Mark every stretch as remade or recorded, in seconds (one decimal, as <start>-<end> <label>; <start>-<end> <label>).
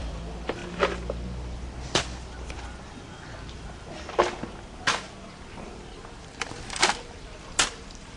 0.0-0.6 remade; 0.6-5.5 recorded; 5.5-8.2 remade